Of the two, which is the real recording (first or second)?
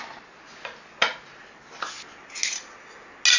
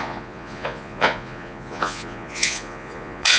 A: first